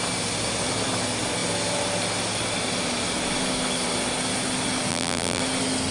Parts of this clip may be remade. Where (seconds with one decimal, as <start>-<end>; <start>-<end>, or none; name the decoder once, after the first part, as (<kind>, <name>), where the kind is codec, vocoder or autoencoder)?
4.9-5.4 (vocoder, BigVGAN v2)